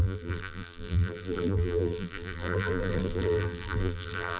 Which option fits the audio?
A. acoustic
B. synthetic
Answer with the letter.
B